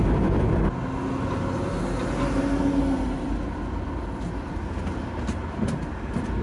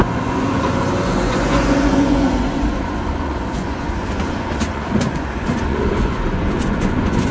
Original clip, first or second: first